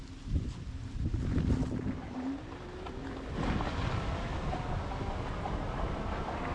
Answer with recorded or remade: recorded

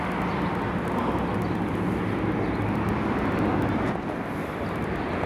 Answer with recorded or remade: recorded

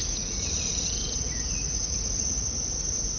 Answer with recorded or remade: remade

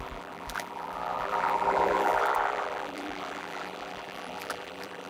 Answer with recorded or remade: remade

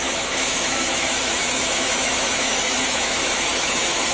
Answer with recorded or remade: remade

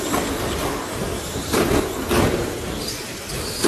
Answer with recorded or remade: recorded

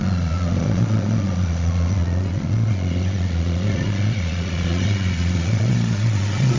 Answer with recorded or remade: remade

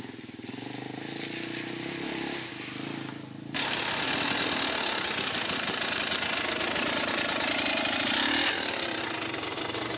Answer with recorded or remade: recorded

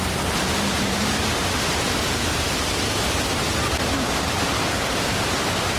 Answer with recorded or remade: remade